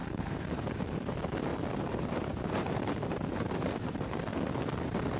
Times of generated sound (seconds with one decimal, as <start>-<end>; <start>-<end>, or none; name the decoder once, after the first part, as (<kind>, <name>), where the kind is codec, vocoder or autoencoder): 0.0-0.8 (vocoder, BigVGAN v2); 1.5-4.6